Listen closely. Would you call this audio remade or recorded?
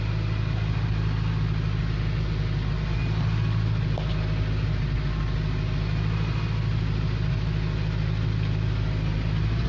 recorded